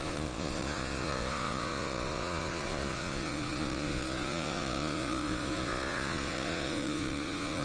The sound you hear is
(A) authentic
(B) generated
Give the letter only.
B